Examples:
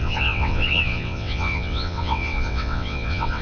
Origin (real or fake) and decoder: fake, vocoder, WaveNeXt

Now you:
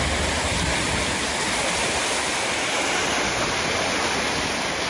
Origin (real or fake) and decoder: real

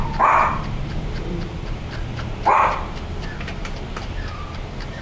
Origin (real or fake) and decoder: real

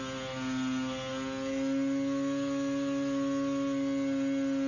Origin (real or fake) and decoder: real